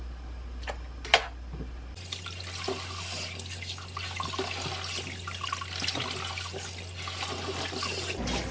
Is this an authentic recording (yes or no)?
yes